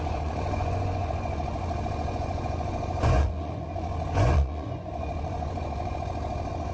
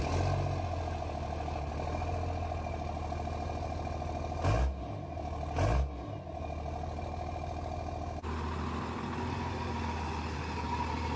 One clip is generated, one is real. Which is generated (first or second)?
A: first